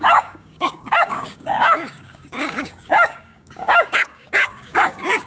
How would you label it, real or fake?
fake